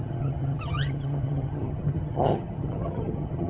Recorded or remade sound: remade